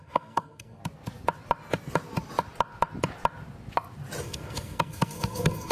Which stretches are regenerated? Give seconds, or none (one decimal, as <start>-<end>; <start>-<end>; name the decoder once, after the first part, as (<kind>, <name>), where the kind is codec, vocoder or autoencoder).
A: 0.0-0.8 (codec, SNAC); 4.2-5.7